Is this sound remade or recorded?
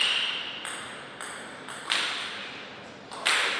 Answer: recorded